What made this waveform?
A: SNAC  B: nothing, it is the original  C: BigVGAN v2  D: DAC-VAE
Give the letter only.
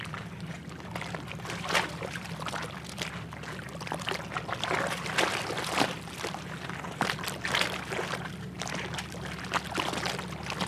B